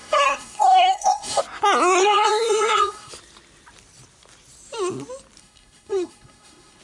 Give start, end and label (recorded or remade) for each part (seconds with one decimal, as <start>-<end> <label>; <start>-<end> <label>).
0.0-1.4 remade; 1.4-2.0 recorded; 2.0-3.1 remade; 3.1-5.4 recorded; 5.4-6.8 remade